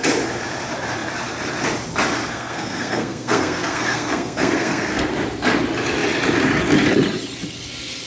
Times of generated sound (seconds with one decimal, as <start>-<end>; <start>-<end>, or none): 2.3-5.1